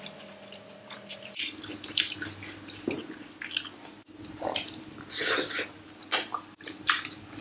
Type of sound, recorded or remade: recorded